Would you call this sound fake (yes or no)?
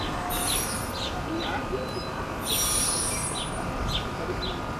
no